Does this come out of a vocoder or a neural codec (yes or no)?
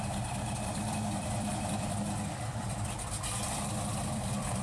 yes